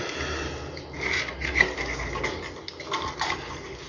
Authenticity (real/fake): real